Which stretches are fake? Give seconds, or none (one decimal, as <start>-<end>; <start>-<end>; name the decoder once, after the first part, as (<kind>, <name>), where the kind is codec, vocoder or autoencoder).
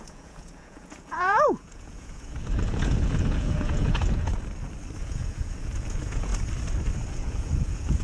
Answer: 0.0-4.3 (vocoder, Vocos); 5.0-6.3; 7.1-8.0